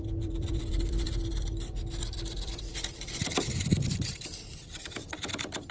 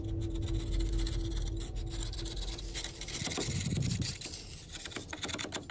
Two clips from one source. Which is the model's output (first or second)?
first